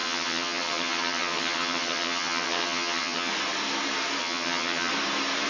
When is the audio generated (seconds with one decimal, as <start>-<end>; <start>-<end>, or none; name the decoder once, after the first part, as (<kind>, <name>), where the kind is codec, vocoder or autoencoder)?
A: 0.0-3.3 (vocoder, HiFi-GAN); 4.2-4.9